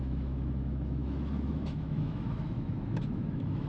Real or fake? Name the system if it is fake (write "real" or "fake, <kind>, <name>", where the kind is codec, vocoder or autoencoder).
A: fake, autoencoder, DAC-VAE